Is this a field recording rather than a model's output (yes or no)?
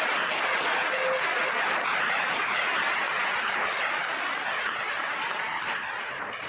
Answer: yes